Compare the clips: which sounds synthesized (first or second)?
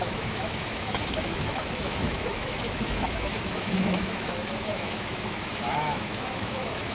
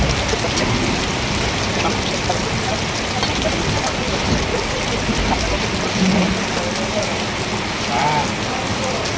first